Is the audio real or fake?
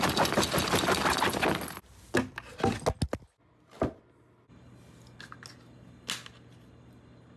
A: real